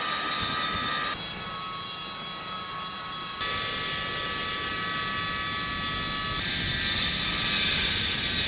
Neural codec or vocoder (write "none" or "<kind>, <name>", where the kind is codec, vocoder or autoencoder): none